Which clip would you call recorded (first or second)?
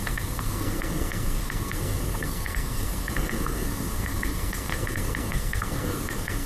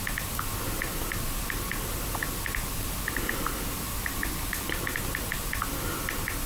second